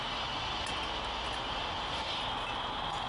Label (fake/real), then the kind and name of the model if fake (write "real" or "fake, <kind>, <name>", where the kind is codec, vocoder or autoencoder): real